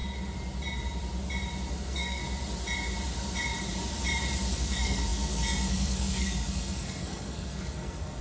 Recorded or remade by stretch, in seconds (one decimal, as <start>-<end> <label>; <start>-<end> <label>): 0.0-1.7 recorded; 1.7-2.2 remade; 2.2-4.5 recorded; 4.5-8.2 remade